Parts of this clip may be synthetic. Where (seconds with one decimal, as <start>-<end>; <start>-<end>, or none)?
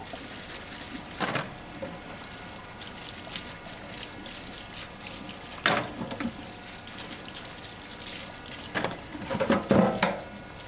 none